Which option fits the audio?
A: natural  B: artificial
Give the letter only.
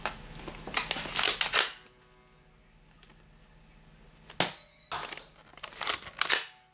A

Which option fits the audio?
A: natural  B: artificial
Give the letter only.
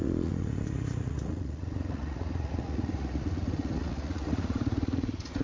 B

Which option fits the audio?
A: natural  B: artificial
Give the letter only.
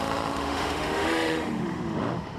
B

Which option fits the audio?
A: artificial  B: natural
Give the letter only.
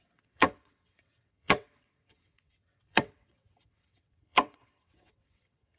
A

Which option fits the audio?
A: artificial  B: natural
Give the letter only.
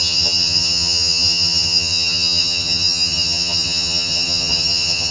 A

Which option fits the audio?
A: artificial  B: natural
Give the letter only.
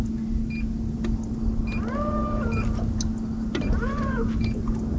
B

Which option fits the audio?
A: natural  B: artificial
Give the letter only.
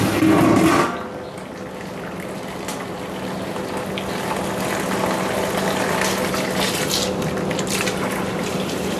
A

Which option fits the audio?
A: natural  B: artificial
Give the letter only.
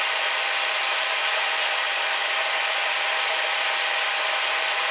A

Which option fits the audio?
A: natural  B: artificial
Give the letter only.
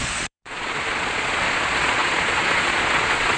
B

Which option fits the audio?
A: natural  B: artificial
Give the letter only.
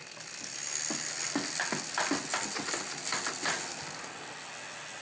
A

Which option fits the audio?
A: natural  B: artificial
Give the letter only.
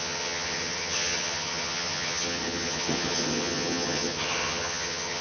B